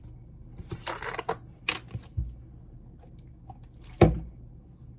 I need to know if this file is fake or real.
real